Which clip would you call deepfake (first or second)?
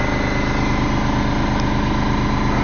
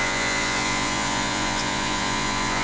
second